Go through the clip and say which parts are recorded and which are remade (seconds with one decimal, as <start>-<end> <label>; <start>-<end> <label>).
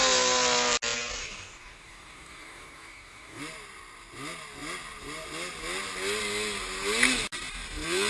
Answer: 0.0-1.2 recorded; 1.2-3.4 remade; 3.4-8.1 recorded